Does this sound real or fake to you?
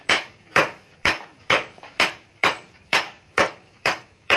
fake